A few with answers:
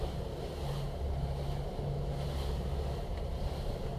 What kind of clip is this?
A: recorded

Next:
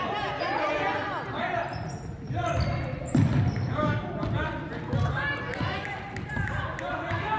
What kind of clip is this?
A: recorded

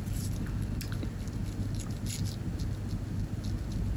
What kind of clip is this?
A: recorded